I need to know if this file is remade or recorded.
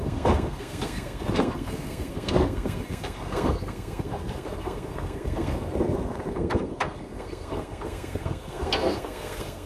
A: remade